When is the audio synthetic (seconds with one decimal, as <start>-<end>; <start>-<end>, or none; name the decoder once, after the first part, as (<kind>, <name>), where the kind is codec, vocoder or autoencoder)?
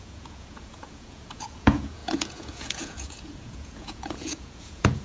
0.0-5.0 (vocoder, Vocos)